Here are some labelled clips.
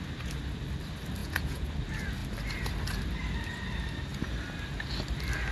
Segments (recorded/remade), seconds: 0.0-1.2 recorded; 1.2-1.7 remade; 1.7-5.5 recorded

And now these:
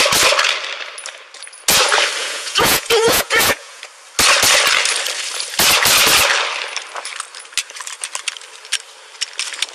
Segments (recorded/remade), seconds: 0.0-2.2 recorded; 2.2-3.8 remade; 3.8-9.7 recorded